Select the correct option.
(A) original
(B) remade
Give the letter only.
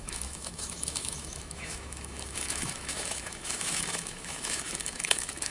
B